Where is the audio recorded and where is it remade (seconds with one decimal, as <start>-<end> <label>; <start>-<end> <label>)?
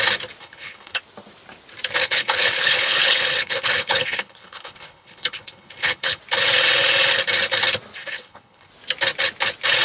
0.0-0.4 recorded; 0.4-1.0 remade; 1.0-2.0 recorded; 2.0-6.2 remade; 6.2-8.0 recorded; 8.0-8.7 remade; 8.7-9.8 recorded